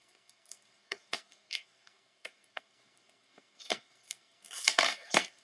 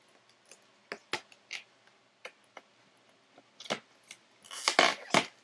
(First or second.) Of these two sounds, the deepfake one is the first